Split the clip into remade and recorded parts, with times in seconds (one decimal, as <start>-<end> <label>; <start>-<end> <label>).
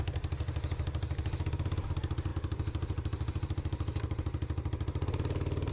0.0-5.7 recorded